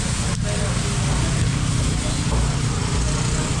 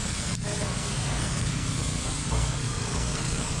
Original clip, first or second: first